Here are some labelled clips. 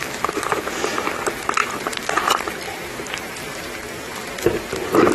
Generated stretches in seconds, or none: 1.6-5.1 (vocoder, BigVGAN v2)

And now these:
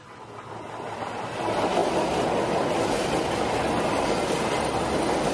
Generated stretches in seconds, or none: none

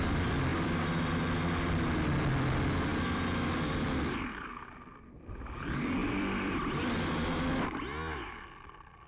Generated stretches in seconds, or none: 0.5-1.4 (vocoder, BigVGAN v2); 2.9-4.5; 6.0-6.5

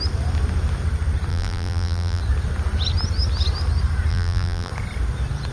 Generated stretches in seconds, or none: 1.3-2.2 (vocoder, BigVGAN v2); 4.1-4.7